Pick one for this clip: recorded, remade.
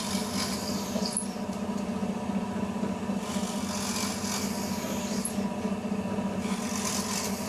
recorded